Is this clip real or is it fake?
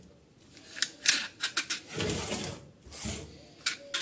real